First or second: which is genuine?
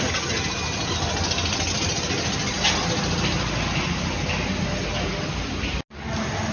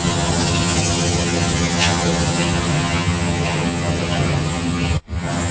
first